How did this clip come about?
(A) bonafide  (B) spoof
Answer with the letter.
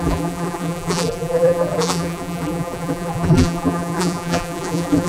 B